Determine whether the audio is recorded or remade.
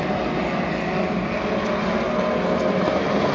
recorded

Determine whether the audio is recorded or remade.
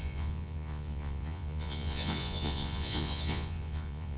remade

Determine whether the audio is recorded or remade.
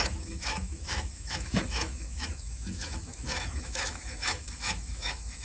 remade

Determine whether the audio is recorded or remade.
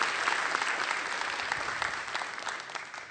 recorded